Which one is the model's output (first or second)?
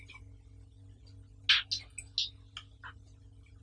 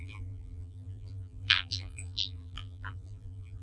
second